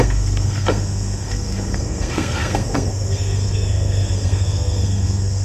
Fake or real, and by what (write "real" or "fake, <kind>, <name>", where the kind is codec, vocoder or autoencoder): fake, codec, SNAC